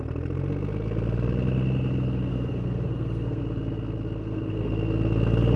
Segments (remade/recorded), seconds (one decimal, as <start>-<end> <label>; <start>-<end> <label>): 0.0-2.3 recorded; 2.3-3.4 remade; 3.4-4.2 recorded; 4.2-4.7 remade; 4.7-5.6 recorded